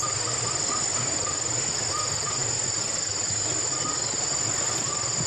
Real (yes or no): yes